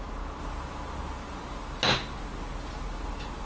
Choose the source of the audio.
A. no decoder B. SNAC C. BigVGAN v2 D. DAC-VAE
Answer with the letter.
A